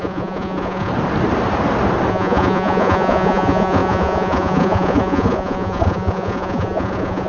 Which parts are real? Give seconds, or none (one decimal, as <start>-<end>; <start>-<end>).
0.9-2.1